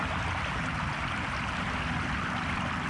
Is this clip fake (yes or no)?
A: no